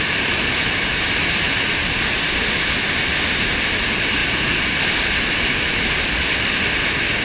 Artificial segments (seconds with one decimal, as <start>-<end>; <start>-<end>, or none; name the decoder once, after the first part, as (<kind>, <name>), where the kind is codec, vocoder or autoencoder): none